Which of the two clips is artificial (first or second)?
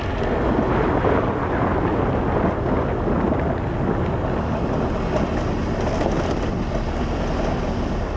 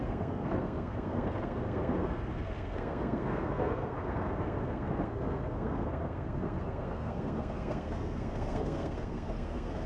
second